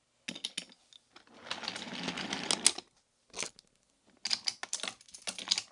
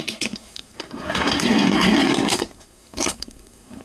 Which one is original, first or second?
first